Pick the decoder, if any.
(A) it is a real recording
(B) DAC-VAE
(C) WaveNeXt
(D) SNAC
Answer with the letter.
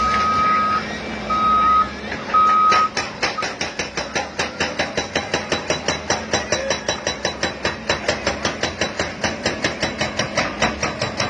A